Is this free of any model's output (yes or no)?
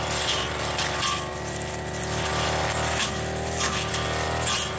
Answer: yes